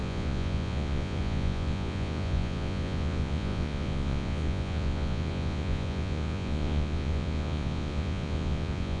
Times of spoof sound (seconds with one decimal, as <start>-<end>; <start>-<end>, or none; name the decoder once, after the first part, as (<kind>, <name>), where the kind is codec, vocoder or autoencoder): 0.0-9.0 (vocoder, Vocos)